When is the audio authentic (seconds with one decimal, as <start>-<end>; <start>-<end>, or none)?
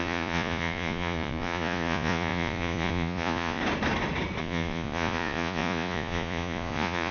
3.6-4.4